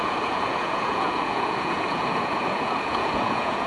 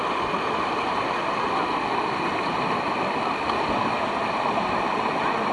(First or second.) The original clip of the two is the second